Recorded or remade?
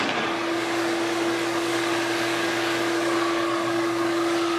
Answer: remade